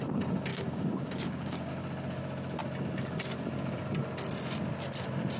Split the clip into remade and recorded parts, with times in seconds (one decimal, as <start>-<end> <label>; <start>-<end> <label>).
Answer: 0.0-0.5 recorded; 0.5-1.7 remade; 1.7-5.4 recorded

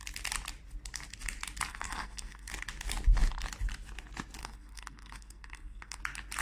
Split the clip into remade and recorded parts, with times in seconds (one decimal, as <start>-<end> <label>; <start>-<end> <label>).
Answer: 0.0-1.7 recorded; 1.7-2.5 remade; 2.5-4.4 recorded; 4.4-6.0 remade; 6.0-6.4 recorded